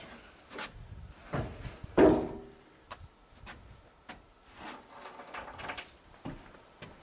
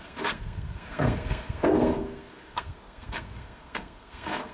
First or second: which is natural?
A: first